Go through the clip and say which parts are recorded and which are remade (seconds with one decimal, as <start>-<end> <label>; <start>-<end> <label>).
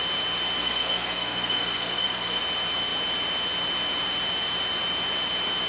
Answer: 0.0-0.6 recorded; 0.6-2.4 remade; 2.4-5.7 recorded